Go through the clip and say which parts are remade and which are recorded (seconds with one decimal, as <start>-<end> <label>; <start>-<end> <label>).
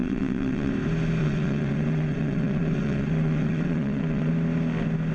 0.0-0.7 remade; 0.7-1.2 recorded; 1.2-4.3 remade; 4.3-5.1 recorded